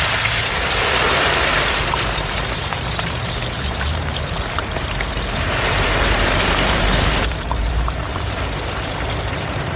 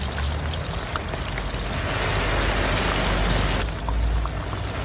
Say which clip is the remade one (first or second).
first